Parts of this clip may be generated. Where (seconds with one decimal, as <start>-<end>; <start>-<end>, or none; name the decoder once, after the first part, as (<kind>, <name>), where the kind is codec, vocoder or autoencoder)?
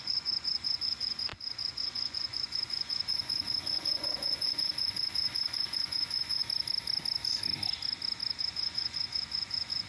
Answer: 0.0-6.4 (vocoder, Vocos); 8.4-9.9